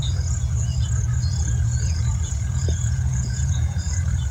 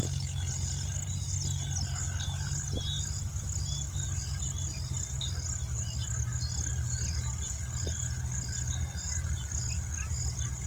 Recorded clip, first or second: second